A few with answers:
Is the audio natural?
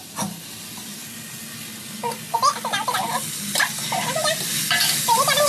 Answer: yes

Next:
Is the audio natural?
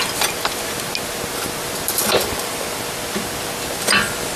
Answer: yes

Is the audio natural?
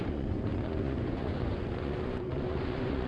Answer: no